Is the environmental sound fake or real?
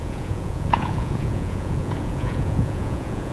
fake